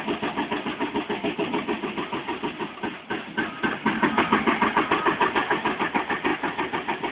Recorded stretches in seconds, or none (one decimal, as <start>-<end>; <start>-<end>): 0.0-7.1